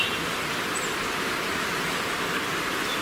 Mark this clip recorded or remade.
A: recorded